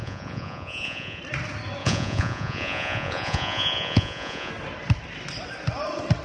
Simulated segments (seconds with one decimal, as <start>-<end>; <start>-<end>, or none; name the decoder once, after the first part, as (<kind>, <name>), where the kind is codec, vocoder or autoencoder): 0.0-1.2 (vocoder, Vocos); 1.8-4.5